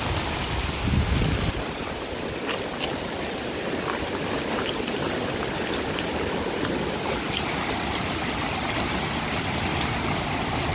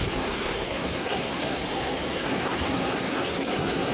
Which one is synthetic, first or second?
second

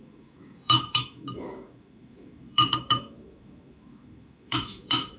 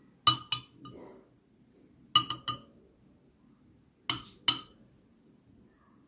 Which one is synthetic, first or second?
first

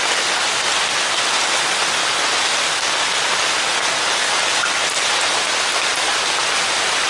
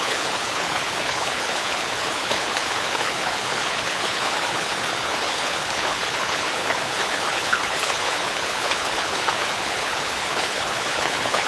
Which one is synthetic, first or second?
second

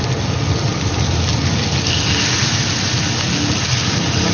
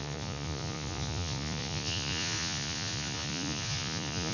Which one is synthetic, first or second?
second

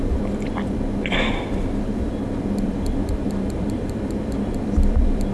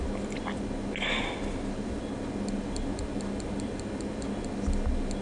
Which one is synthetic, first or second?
first